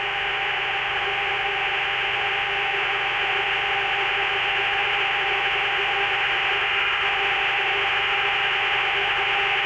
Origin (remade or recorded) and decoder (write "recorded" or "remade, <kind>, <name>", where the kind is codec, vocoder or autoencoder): remade, autoencoder, DAC-VAE